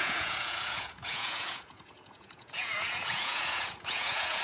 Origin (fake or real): fake